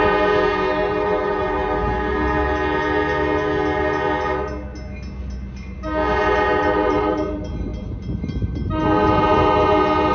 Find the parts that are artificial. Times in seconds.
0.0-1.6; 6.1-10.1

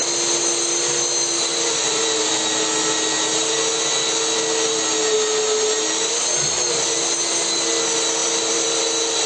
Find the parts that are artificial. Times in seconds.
1.5-2.3; 8.2-8.8

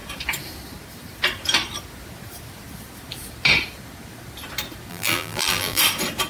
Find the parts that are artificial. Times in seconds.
4.9-5.8

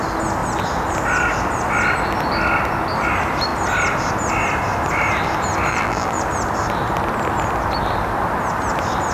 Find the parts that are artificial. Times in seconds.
5.7-6.2

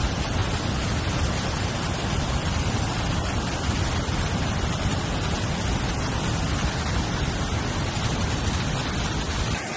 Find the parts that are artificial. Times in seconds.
0.0-0.4; 1.6-9.8